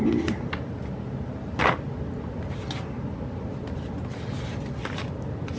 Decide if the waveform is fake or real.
real